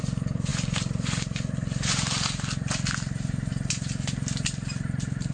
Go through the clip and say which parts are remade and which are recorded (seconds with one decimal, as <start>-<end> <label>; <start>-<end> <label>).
0.0-5.3 recorded